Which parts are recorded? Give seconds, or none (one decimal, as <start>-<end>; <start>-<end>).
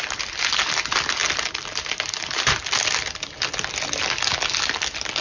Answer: 0.0-5.2